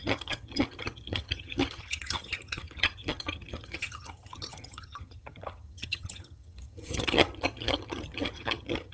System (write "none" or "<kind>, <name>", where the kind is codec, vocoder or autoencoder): vocoder, HiFi-GAN